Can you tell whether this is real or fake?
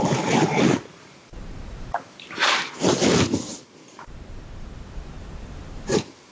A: fake